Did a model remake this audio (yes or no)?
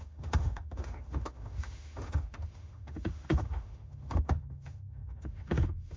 yes